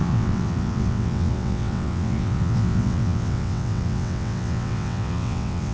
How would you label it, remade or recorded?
remade